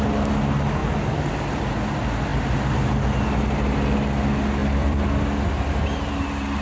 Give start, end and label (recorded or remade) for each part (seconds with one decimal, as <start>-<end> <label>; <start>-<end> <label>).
0.0-0.8 recorded; 0.8-1.3 remade; 1.3-4.6 recorded; 4.6-5.2 remade; 5.2-6.6 recorded